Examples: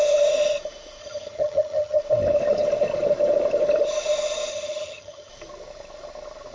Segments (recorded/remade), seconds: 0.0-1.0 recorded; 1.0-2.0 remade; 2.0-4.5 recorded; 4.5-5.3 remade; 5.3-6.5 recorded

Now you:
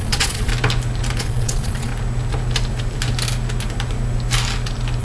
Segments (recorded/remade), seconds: 0.0-0.5 remade; 0.5-1.2 recorded; 1.2-1.9 remade; 1.9-5.0 recorded

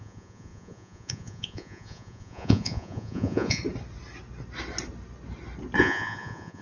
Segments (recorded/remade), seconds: 0.0-3.6 remade; 3.6-5.8 recorded; 5.8-6.6 remade